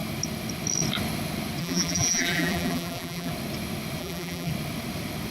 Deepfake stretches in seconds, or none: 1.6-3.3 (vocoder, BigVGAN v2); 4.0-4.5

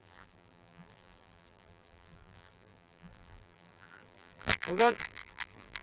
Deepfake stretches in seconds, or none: 0.0-5.8 (vocoder, BigVGAN v2)

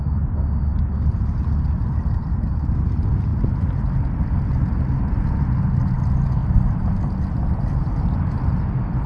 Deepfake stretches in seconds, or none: 3.3-4.5 (vocoder, BigVGAN v2); 6.4-7.4

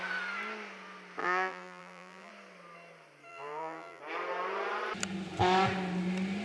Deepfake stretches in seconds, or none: 1.2-2.3 (vocoder, BigVGAN v2); 3.3-4.0

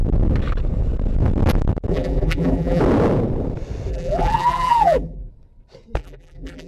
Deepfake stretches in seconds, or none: 1.9-2.8 (vocoder, BigVGAN v2); 3.9-5.3; 6.0-6.7

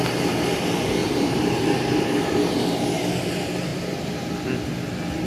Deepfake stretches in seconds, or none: 1.0-2.8 (vocoder, BigVGAN v2); 3.7-4.3